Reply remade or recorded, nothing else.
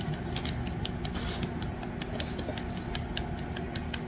recorded